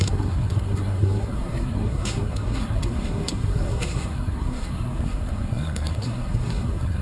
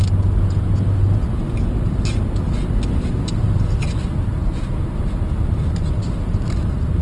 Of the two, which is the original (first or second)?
second